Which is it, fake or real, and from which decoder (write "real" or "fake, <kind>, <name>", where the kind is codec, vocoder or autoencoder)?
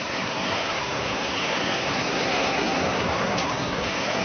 fake, codec, SNAC